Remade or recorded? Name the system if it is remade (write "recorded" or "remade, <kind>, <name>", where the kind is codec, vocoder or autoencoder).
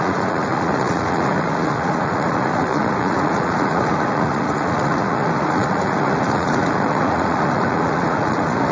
remade, vocoder, Vocos